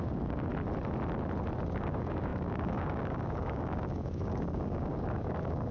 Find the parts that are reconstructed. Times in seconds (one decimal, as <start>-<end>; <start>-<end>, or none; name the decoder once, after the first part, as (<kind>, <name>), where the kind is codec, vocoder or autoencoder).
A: 0.0-0.5 (codec, DAC); 1.8-5.7

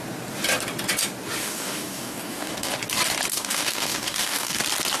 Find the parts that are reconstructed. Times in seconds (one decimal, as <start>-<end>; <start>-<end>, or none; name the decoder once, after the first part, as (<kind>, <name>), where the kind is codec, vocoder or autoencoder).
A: 1.4-2.7 (codec, DAC); 3.3-4.6

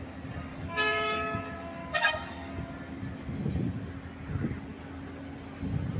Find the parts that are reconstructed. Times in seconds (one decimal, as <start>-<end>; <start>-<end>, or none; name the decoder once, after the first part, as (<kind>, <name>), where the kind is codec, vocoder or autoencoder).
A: 0.5-1.4 (codec, DAC); 1.8-2.5